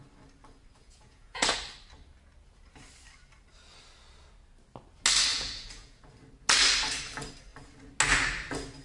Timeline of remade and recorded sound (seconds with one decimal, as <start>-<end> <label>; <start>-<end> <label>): 0.0-0.8 recorded; 0.8-1.6 remade; 1.6-5.3 recorded; 5.3-6.1 remade; 6.1-8.8 recorded